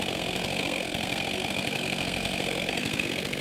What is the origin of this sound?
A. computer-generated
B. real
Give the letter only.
A